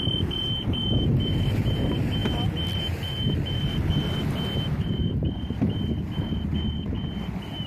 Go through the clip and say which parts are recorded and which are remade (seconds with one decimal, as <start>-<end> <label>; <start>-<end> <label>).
0.0-7.7 recorded